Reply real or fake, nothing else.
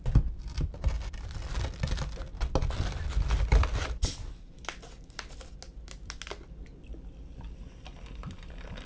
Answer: real